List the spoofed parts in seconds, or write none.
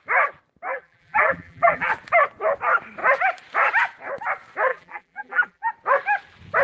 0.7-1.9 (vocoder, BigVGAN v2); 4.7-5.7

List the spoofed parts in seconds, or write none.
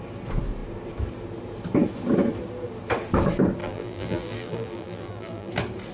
3.6-5.5 (vocoder, BigVGAN v2)